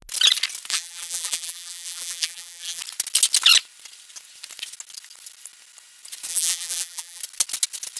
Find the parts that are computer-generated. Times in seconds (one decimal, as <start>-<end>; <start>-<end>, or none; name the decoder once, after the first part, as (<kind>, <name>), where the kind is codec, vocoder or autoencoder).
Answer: 0.7-2.8 (vocoder, BigVGAN v2); 6.3-7.2